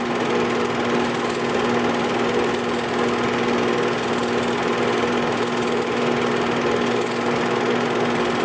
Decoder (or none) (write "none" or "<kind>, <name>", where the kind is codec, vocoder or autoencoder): none